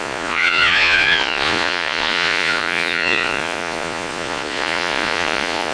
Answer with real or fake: fake